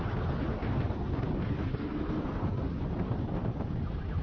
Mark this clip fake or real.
real